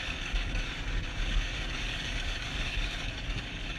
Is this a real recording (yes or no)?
no